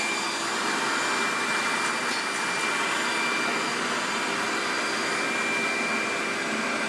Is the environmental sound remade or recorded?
recorded